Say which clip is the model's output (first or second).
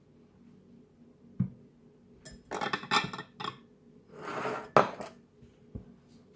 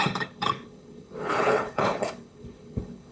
second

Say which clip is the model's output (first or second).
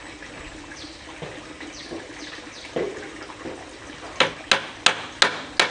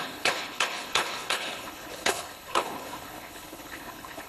second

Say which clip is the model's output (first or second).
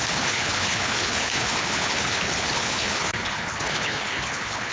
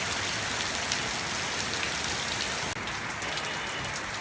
first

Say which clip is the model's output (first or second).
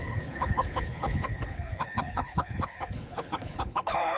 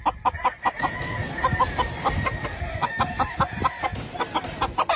first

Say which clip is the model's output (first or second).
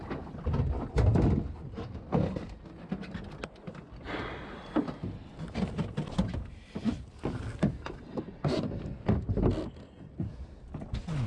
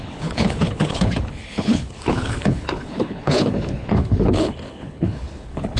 second